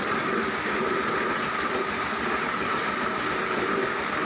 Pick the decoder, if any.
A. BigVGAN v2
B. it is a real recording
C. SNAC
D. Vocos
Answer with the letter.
B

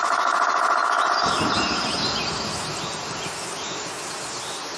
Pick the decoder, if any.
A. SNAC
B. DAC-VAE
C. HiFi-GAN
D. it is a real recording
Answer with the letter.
D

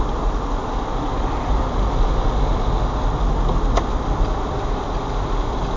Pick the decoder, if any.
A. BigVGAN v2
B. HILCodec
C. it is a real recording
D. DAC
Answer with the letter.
C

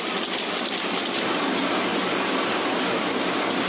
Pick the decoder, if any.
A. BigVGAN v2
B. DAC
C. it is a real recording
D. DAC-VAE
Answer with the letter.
C